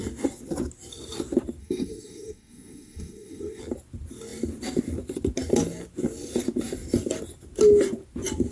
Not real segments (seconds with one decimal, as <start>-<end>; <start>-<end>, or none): 1.6-3.6